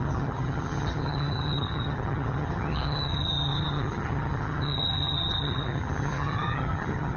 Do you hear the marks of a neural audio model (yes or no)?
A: yes